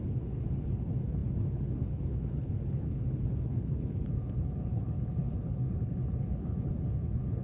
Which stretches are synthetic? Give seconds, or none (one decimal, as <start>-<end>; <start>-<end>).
0.0-7.4